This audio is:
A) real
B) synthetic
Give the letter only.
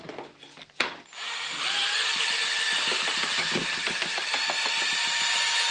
A